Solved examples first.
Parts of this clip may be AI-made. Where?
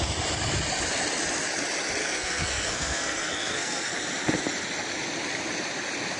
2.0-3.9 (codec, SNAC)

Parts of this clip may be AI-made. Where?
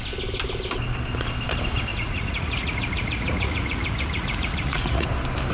1.9-5.1 (vocoder, Vocos)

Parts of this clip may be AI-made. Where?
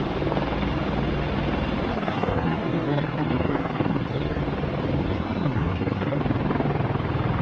1.9-4.4 (codec, SNAC); 5.0-6.2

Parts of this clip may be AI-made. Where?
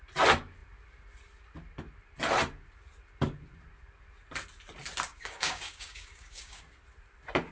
5.1-6.6 (codec, DAC)